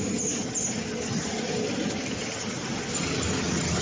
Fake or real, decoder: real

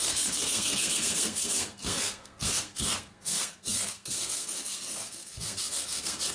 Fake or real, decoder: fake, codec, SNAC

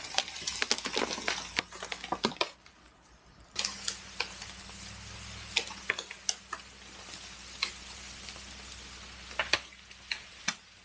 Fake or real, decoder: real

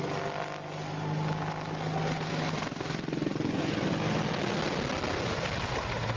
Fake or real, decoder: real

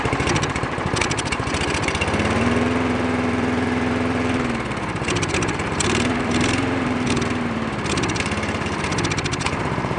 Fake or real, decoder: fake, vocoder, BigVGAN v2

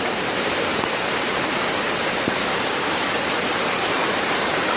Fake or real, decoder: fake, vocoder, BigVGAN v2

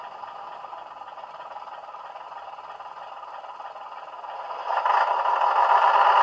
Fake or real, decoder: real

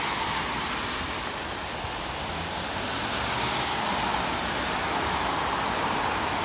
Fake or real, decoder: real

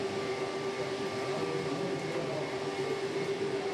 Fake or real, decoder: real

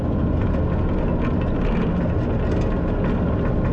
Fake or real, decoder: real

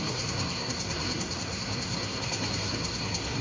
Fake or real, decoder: fake, codec, SNAC